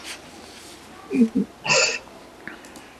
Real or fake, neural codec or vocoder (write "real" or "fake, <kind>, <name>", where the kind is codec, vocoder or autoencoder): real